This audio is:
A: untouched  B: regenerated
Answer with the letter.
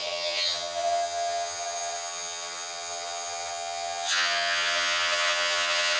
B